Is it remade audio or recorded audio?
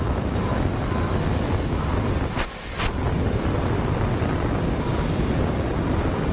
recorded